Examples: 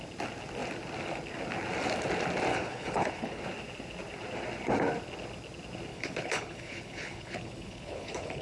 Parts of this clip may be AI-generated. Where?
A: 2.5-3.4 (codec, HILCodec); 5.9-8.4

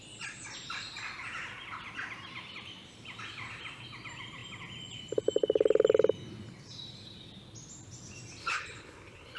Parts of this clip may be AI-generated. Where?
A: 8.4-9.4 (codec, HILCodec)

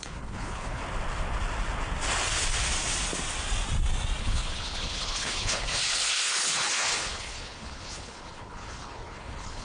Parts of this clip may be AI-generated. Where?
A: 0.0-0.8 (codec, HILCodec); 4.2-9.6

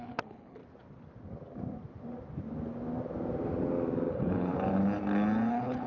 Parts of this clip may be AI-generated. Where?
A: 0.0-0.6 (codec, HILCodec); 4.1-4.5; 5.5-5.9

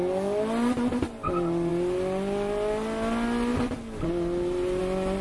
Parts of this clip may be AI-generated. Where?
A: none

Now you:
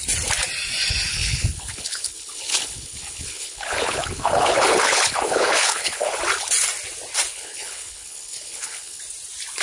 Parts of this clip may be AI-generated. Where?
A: 1.1-6.2 (codec, HILCodec); 7.3-9.0

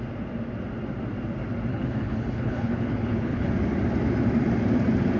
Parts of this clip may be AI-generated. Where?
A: 1.7-3.5 (codec, HILCodec)